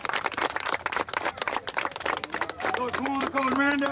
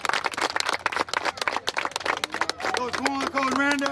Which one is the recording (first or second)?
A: second